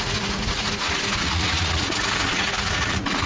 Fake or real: fake